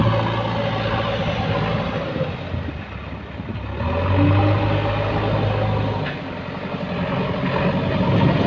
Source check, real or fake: real